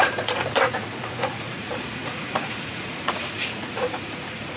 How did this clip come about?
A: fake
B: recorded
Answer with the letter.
A